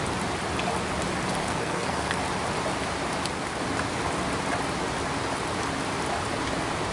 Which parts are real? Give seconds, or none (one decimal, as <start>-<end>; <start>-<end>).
0.0-1.4; 2.2-6.9

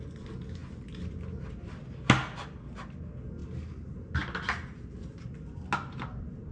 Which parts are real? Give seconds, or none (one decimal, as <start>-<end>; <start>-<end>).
0.0-3.4; 4.0-6.5

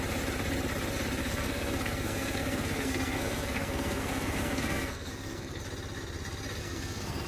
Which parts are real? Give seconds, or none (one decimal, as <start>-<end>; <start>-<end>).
0.0-1.2; 5.6-6.6

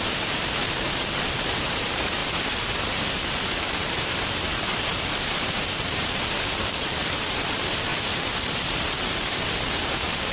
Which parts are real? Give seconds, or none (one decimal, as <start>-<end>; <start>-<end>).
none

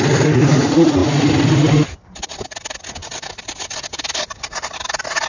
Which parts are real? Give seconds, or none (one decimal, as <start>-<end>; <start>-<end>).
0.0-5.3

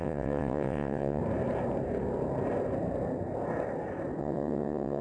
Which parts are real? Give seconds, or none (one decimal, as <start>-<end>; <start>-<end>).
1.2-4.2

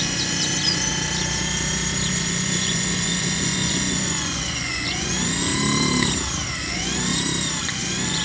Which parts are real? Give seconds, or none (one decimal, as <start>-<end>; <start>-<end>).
0.9-2.1; 5.5-6.6; 7.1-7.6